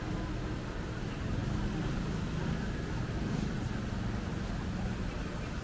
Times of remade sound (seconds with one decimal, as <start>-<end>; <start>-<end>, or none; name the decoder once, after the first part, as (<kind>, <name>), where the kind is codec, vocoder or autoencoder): none